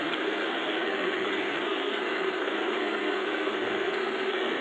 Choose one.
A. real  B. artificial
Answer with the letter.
B